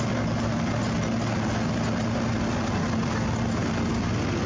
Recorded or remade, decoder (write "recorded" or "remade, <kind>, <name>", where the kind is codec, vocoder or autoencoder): recorded